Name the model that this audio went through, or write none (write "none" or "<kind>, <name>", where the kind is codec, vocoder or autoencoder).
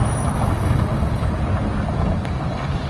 none